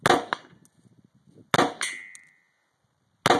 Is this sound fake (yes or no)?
no